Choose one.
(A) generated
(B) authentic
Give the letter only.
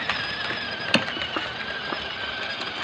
B